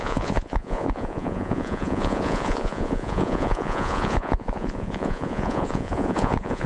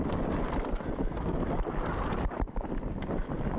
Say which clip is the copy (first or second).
first